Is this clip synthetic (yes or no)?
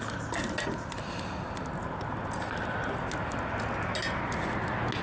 no